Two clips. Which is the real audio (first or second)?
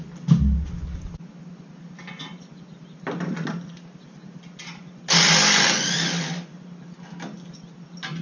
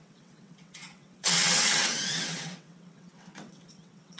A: first